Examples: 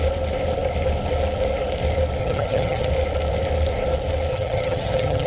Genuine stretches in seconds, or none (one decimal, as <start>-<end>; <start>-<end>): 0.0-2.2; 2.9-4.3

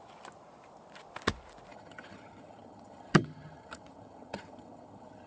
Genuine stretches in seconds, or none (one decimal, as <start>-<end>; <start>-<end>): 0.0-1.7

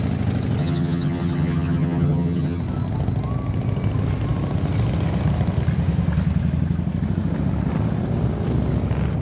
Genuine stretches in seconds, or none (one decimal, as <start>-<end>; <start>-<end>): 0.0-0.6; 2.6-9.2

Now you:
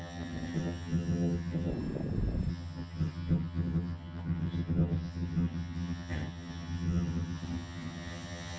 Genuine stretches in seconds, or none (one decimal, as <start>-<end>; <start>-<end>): 1.7-2.5

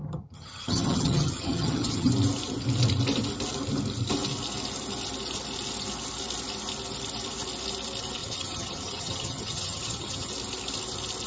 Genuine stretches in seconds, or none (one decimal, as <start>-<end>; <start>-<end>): 2.1-8.2; 10.3-11.3

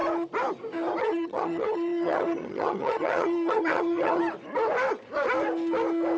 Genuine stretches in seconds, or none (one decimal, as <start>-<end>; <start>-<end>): 0.0-1.0; 4.2-6.2